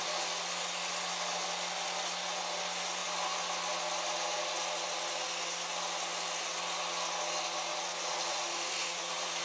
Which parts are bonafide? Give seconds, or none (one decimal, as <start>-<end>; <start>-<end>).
0.0-7.7